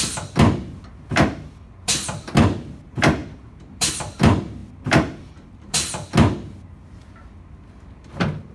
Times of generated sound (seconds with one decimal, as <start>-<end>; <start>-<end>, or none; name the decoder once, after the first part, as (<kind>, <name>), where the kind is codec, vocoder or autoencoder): none